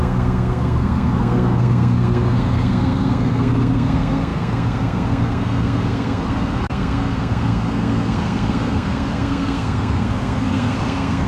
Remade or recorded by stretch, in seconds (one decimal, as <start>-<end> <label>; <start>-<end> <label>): 0.0-11.3 remade